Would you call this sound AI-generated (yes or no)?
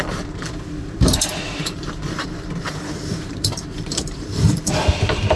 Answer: yes